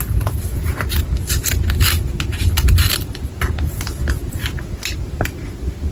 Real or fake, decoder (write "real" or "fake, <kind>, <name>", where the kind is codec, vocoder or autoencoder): real